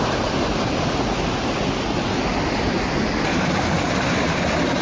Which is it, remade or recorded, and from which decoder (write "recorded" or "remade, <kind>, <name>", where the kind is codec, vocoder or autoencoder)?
recorded